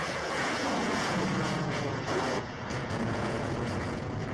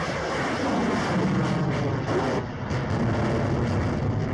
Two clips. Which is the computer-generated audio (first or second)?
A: first